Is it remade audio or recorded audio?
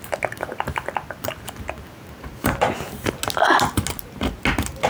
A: recorded